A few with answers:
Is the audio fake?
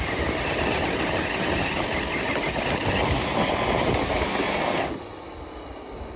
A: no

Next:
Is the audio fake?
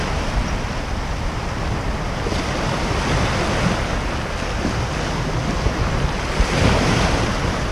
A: no